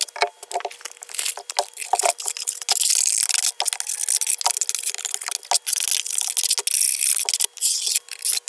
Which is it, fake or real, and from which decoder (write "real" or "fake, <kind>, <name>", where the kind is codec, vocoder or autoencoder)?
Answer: real